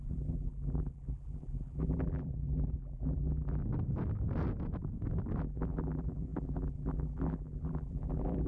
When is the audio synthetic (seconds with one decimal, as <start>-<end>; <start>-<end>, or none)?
0.0-3.6; 5.4-8.5